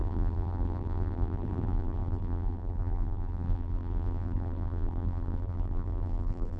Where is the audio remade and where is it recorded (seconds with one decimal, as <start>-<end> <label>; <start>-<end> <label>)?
0.0-6.6 remade